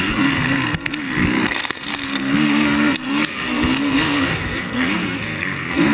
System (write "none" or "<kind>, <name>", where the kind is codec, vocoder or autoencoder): codec, SNAC